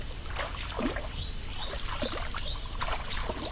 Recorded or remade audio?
recorded